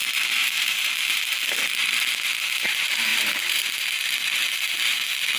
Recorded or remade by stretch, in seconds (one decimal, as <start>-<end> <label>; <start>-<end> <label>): 0.0-0.4 recorded; 0.4-1.4 remade; 1.4-3.1 recorded; 3.1-3.7 remade; 3.7-5.4 recorded